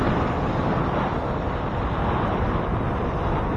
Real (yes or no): yes